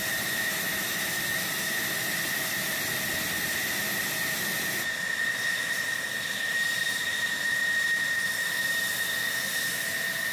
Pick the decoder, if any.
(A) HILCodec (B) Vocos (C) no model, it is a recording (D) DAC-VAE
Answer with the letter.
C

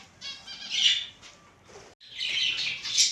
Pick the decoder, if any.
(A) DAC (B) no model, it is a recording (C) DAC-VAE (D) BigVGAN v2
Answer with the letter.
B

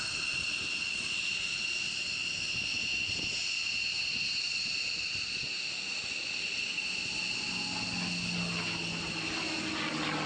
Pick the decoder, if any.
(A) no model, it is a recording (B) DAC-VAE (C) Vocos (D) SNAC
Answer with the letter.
A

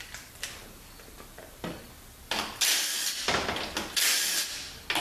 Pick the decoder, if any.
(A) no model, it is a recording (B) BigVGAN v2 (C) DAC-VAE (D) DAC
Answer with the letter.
A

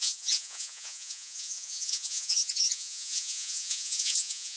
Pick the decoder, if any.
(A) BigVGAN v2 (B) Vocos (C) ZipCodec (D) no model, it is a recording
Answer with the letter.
B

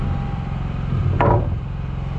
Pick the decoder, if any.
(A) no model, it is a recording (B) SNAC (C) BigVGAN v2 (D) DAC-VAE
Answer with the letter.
A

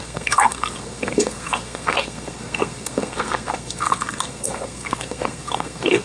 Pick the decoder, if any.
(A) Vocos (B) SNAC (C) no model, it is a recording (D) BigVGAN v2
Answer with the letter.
B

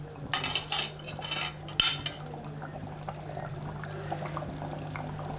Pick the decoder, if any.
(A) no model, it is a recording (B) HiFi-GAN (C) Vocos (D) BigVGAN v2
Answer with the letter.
A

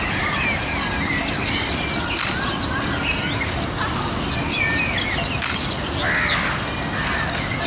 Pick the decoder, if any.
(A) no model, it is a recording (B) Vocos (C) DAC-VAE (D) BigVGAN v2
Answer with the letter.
A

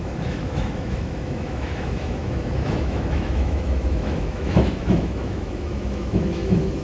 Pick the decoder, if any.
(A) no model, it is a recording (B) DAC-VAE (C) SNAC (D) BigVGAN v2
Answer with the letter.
B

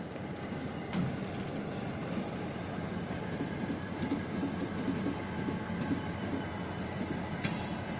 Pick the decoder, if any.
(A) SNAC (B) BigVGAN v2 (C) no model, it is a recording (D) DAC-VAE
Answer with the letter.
B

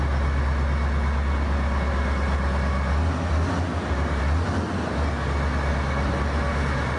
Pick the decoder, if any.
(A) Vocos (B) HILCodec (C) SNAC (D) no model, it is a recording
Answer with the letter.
D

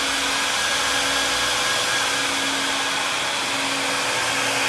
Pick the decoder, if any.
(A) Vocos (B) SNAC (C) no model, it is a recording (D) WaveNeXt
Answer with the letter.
C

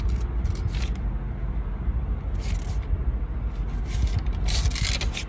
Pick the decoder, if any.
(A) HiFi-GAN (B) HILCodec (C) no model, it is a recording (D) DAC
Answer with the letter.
C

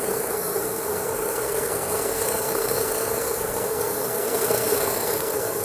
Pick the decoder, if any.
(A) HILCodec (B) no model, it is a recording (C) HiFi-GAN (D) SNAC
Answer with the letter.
D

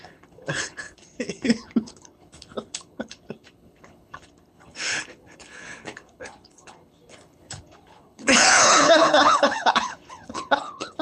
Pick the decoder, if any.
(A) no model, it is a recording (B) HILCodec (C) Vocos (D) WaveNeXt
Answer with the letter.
B